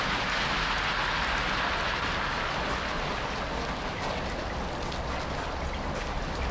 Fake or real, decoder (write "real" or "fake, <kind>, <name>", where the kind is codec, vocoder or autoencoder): real